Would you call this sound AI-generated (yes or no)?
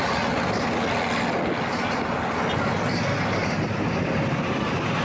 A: no